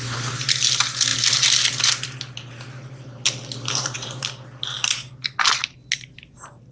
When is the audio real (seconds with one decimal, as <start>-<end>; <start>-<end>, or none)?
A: 0.0-6.7